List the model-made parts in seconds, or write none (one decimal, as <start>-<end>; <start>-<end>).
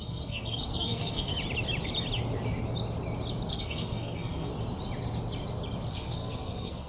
0.0-1.3; 3.5-4.5; 5.9-6.9